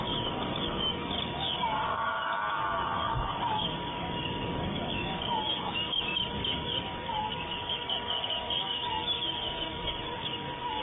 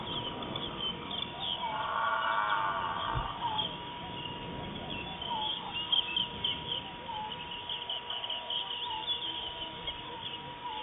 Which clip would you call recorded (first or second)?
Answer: second